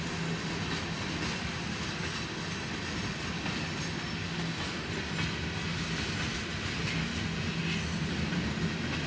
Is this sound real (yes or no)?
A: yes